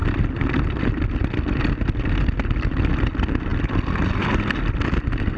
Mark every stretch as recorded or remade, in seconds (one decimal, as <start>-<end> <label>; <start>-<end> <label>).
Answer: 0.0-5.4 recorded